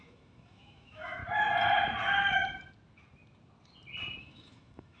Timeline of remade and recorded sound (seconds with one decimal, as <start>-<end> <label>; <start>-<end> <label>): 0.0-1.2 remade; 1.2-4.2 recorded; 4.2-5.0 remade